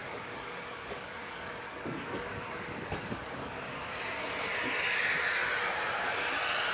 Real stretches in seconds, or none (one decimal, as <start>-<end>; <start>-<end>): 4.0-6.7